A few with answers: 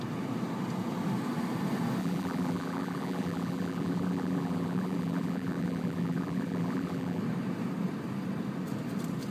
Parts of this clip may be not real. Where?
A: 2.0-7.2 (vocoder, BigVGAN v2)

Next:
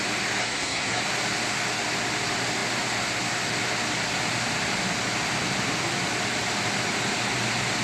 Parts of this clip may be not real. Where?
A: 0.4-1.0 (codec, SNAC)